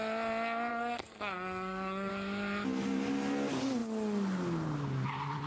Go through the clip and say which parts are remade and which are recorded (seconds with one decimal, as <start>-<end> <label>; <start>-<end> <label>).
0.0-0.7 recorded; 0.7-2.1 remade; 2.1-5.5 recorded